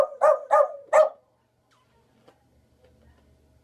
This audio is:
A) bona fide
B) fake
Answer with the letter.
A